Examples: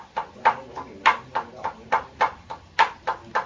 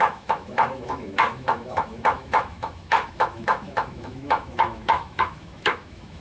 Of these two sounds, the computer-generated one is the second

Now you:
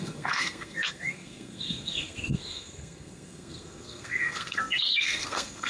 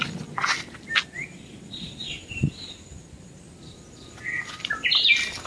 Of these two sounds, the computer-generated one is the first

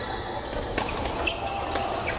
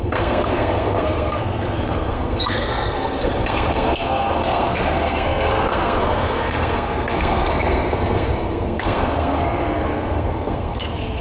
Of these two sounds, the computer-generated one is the second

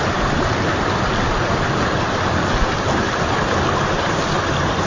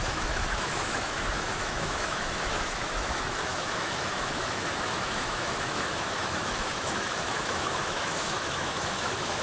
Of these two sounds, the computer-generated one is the second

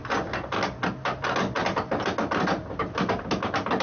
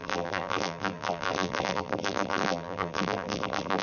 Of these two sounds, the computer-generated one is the second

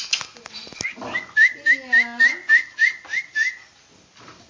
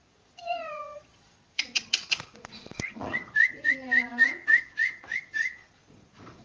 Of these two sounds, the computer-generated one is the second